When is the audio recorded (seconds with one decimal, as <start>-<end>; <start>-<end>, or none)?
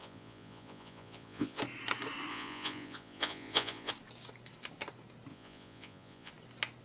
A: 1.6-2.3; 3.9-5.3; 6.3-6.8